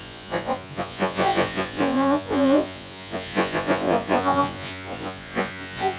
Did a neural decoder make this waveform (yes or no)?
yes